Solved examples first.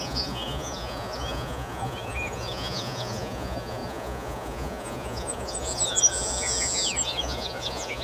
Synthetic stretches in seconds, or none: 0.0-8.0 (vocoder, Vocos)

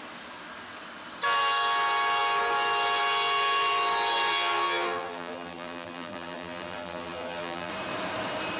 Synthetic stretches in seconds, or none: 4.3-7.7 (vocoder, BigVGAN v2)

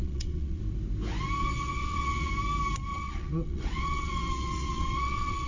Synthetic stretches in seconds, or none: 0.0-0.6 (vocoder, WaveNeXt); 1.4-2.3; 2.9-5.5

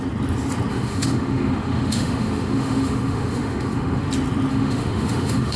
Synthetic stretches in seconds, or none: 0.7-4.1 (autoencoder, DAC-VAE); 4.5-5.6

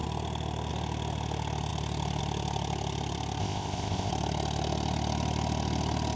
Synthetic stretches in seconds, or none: 3.4-4.1 (codec, ZipCodec)

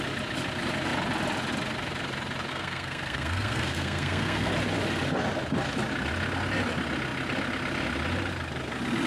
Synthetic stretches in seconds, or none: 2.5-4.5 (codec, SNAC)